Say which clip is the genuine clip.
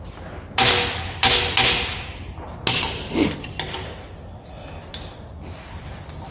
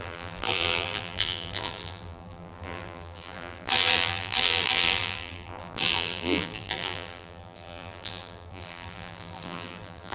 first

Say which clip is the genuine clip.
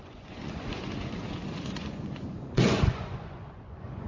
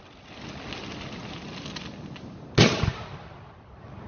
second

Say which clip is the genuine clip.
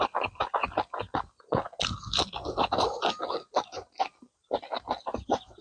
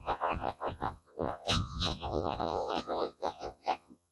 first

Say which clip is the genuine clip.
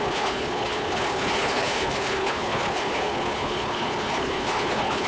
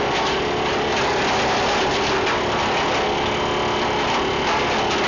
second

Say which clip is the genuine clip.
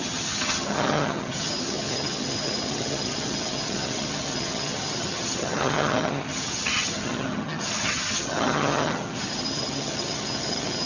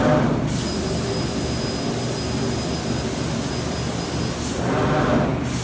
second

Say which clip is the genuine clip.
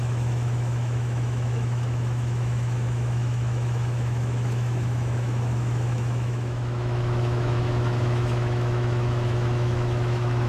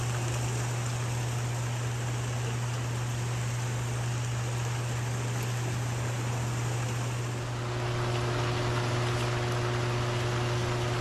second